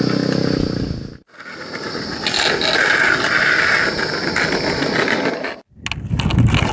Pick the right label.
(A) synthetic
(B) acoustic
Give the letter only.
B